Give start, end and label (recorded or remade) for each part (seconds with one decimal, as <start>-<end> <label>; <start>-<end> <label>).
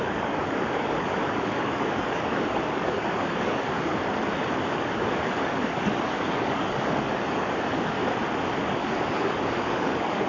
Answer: 0.0-3.9 remade; 3.9-4.6 recorded; 4.6-8.0 remade; 8.0-8.6 recorded; 8.6-10.3 remade